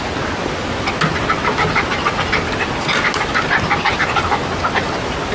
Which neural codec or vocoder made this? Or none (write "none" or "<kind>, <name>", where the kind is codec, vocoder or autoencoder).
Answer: none